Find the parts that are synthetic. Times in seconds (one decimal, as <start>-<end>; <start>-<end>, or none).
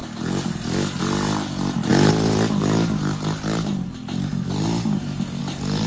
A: none